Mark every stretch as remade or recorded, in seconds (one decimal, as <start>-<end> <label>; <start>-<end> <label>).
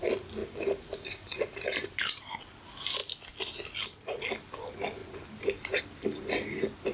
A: 0.0-0.4 recorded; 0.4-2.4 remade; 2.4-6.9 recorded